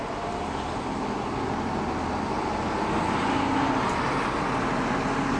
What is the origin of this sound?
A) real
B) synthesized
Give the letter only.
A